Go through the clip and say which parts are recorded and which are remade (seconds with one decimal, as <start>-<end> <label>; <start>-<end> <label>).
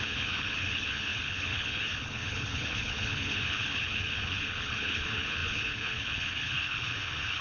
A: 0.0-7.4 remade